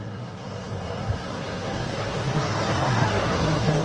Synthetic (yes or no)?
yes